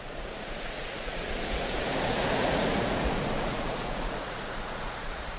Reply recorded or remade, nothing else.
remade